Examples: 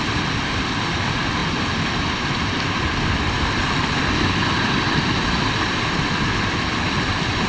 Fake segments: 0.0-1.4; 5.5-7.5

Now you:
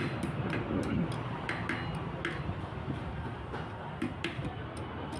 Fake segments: none

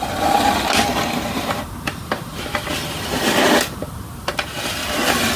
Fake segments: none